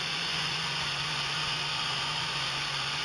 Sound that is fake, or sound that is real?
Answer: fake